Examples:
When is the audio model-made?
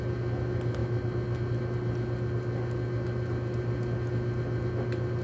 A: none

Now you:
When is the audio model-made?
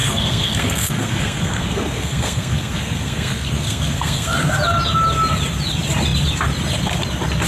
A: 0.0-4.5 (codec, SNAC)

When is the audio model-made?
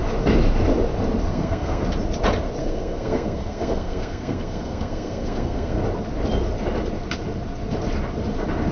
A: 1.3-1.8 (codec, SNAC); 2.6-5.8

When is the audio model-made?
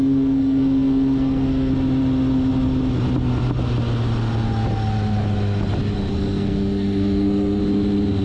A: 0.0-1.7 (codec, SNAC); 6.1-7.6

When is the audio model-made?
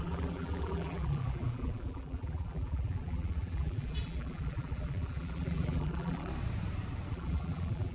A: 0.0-6.3 (vocoder, BigVGAN v2); 7.1-7.9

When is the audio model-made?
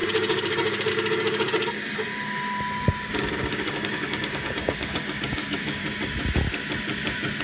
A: 0.0-1.8 (codec, DAC); 3.3-5.8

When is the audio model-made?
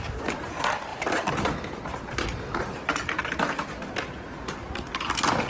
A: none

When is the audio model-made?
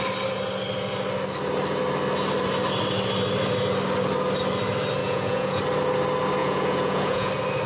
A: 5.0-5.6 (vocoder, Vocos); 6.4-7.3